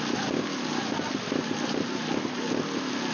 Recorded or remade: recorded